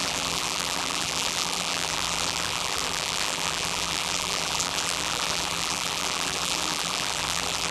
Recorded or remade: remade